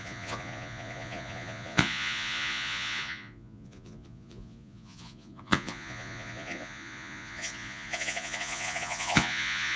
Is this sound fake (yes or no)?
yes